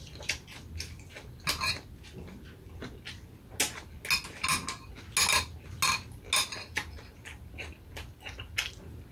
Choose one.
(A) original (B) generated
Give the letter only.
A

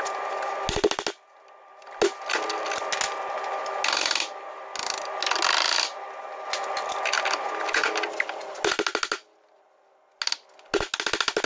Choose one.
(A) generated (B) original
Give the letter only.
B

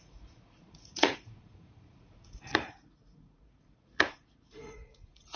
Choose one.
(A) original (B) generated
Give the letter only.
B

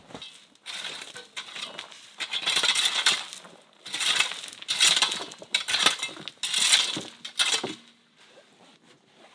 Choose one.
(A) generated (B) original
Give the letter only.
B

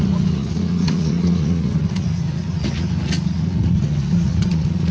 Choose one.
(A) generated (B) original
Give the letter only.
A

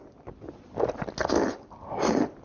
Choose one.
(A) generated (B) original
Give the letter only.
B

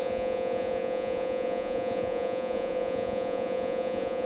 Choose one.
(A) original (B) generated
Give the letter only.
B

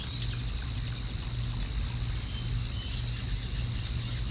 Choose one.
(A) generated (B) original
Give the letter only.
B